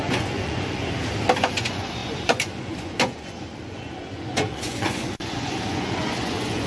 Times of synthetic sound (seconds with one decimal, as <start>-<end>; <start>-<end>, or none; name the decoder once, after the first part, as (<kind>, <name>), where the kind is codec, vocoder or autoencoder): 0.0-0.8 (vocoder, Vocos); 1.4-6.7